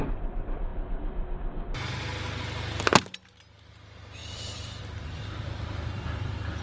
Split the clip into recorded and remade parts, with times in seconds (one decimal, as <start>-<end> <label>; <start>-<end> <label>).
0.0-4.2 recorded; 4.2-4.8 remade; 4.8-6.6 recorded